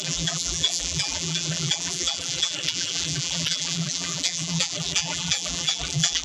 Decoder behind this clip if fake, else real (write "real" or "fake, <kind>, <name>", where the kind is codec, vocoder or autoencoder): fake, vocoder, BigVGAN v2